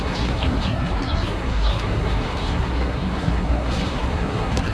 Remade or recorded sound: remade